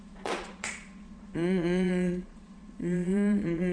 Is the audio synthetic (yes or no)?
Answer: yes